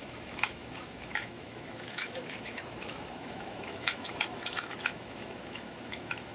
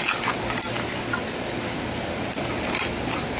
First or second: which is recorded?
second